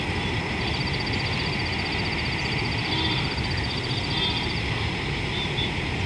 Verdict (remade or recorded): recorded